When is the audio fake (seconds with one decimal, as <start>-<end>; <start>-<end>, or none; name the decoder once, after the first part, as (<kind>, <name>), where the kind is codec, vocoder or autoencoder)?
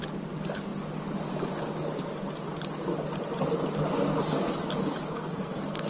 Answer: 5.1-5.9 (codec, SNAC)